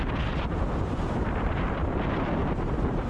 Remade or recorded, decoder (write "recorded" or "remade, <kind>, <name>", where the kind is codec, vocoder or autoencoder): recorded